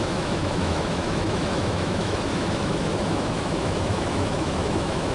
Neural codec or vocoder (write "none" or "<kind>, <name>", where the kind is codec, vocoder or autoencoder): autoencoder, DAC-VAE